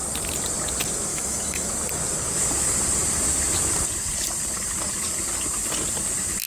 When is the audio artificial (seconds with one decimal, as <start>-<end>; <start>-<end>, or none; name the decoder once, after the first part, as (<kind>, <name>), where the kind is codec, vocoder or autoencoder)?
1.1-1.7 (autoencoder, DAC-VAE)